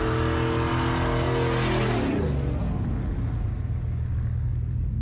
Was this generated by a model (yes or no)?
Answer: no